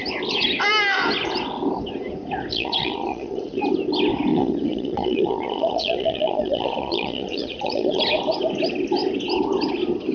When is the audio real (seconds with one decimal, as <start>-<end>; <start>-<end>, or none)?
0.0-2.5; 3.6-4.3; 8.0-10.1